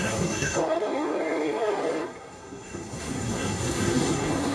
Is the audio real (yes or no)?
no